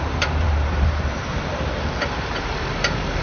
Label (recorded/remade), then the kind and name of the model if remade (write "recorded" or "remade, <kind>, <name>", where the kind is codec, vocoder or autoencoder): remade, vocoder, BigVGAN v2